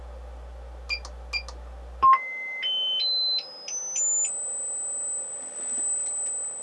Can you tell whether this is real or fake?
real